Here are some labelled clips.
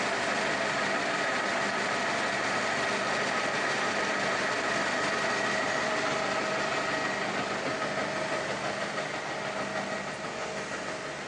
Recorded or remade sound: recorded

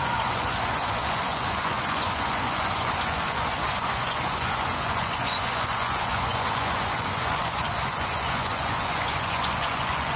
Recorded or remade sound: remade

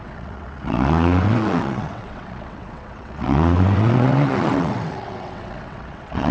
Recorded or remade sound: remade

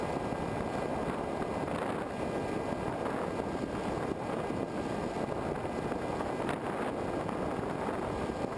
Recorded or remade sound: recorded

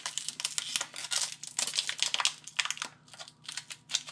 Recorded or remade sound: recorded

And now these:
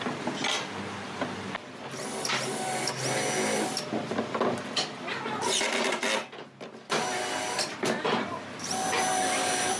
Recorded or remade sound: recorded